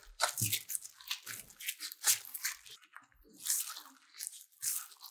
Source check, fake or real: real